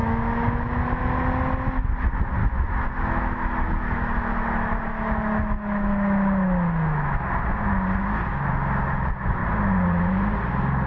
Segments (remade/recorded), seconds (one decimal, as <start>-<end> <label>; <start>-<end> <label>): 0.0-1.0 remade; 1.0-2.4 recorded; 2.4-7.2 remade; 7.2-8.0 recorded; 8.0-8.5 remade; 8.5-10.9 recorded